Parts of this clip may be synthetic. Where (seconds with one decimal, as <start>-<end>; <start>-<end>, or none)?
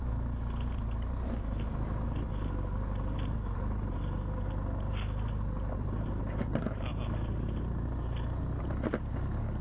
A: none